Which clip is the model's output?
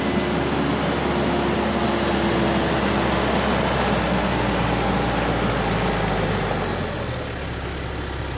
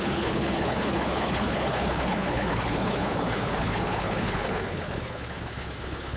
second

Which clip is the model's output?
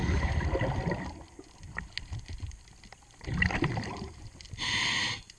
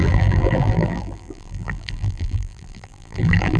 second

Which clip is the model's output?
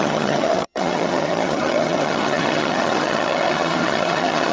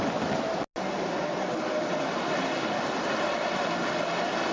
first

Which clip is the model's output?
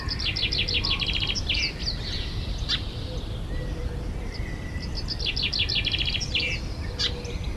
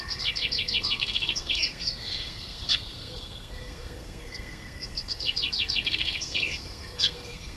second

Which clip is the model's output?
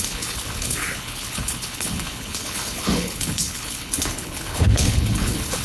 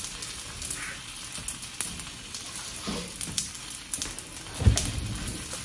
first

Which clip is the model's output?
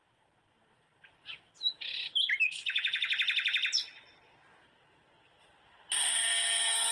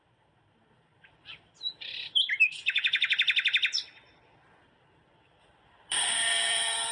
second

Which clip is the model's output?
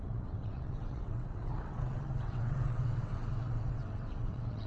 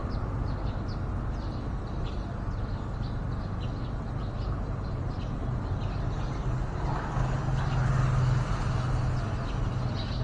first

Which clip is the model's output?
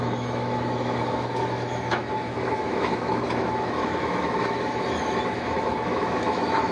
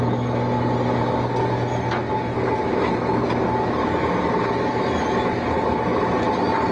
first